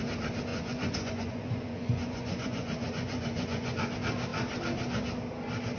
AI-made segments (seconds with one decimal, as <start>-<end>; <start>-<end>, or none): 0.5-3.9